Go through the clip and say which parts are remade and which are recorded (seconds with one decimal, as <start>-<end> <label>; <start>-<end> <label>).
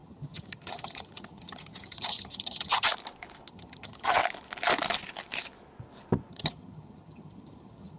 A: 0.0-2.9 remade; 2.9-3.5 recorded; 3.5-4.2 remade; 4.2-6.3 recorded; 6.3-8.0 remade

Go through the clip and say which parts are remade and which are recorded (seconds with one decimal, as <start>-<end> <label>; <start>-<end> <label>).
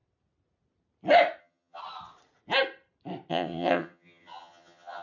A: 0.0-1.4 recorded; 1.4-1.8 remade; 1.8-3.3 recorded; 3.3-5.0 remade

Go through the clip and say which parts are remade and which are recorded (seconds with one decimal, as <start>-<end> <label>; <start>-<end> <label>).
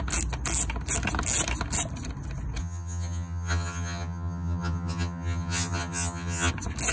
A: 0.0-2.6 recorded; 2.6-6.5 remade; 6.5-6.9 recorded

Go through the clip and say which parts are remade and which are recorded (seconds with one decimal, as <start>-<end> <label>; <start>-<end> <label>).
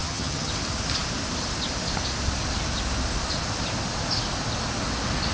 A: 0.0-0.5 remade; 0.5-5.3 recorded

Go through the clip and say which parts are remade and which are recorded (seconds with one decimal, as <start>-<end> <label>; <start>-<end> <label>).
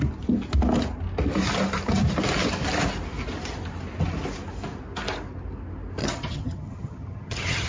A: 0.0-6.0 recorded; 6.0-7.7 remade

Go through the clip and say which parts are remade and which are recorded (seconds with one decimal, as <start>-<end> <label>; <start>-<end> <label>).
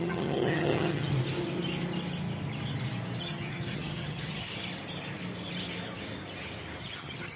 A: 0.0-1.1 remade; 1.1-3.2 recorded; 3.2-4.5 remade; 4.5-6.8 recorded; 6.8-7.4 remade